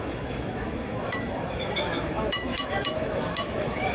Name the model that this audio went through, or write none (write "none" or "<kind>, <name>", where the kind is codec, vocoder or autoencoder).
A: autoencoder, DAC-VAE